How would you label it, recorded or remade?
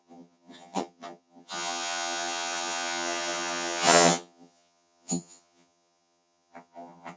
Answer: remade